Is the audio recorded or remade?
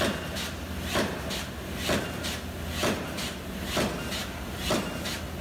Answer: recorded